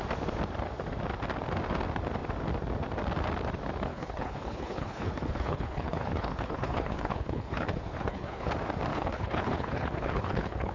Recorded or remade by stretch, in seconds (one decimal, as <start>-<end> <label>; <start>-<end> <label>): 0.0-3.9 recorded; 3.9-8.5 remade; 8.5-8.9 recorded; 8.9-10.7 remade